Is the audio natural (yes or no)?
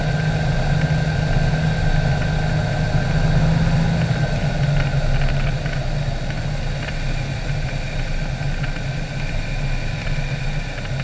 yes